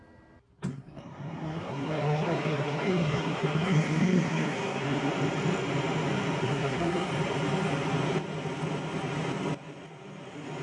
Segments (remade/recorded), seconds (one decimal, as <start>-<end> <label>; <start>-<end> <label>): 0.0-0.7 recorded; 0.7-5.1 remade; 5.1-6.4 recorded; 6.4-7.1 remade; 7.1-10.6 recorded